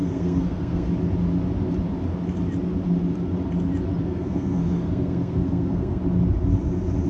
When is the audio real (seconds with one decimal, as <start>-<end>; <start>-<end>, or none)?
0.9-4.0; 6.0-7.1